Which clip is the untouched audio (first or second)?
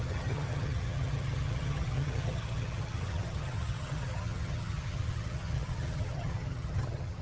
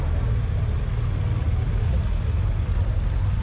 second